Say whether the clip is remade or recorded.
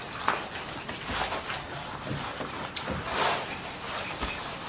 recorded